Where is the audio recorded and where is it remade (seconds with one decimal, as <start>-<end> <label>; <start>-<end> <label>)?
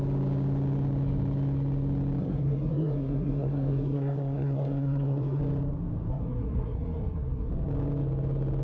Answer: 0.0-2.2 recorded; 2.2-5.4 remade; 5.4-6.1 recorded; 6.1-7.5 remade; 7.5-8.6 recorded